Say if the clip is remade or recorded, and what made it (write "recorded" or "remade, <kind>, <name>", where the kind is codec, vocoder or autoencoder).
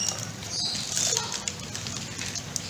recorded